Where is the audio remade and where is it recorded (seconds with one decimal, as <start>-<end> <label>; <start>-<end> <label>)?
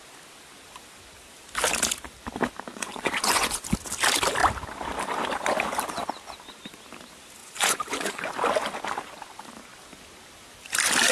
0.0-2.7 recorded; 2.7-3.6 remade; 3.6-7.4 recorded; 7.4-8.3 remade; 8.3-11.1 recorded